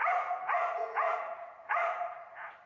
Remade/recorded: remade